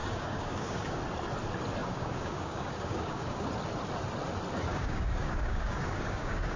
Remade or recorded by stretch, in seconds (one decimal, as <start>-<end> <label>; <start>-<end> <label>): 0.0-1.0 remade; 1.0-1.8 recorded; 1.8-3.5 remade; 3.5-4.7 recorded; 4.7-6.6 remade